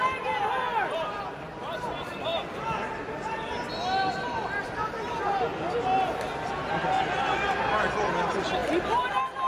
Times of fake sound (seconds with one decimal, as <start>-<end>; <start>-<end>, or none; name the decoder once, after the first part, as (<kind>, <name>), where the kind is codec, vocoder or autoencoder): none